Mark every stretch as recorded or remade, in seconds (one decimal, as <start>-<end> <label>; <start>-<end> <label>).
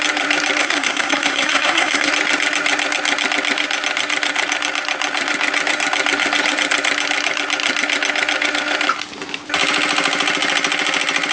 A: 0.0-0.6 recorded; 0.6-2.1 remade; 2.1-11.3 recorded